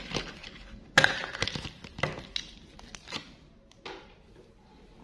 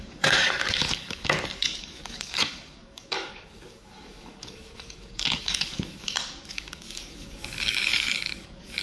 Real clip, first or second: first